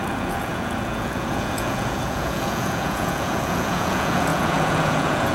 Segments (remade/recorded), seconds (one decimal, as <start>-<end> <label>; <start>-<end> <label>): 0.0-5.3 remade